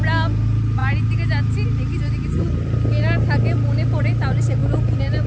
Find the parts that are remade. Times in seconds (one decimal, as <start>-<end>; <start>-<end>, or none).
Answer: none